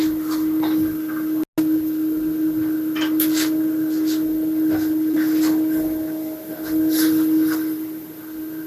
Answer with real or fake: real